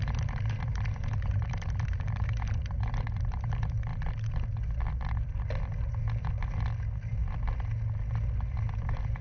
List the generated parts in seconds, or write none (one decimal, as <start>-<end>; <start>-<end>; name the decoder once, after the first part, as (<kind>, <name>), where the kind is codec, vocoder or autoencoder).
0.0-3.9 (vocoder, BigVGAN v2); 8.4-9.2